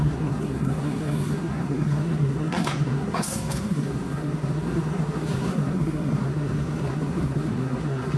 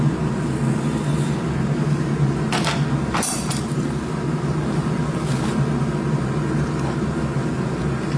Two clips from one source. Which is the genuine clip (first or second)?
second